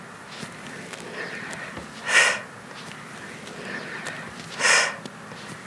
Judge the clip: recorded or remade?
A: recorded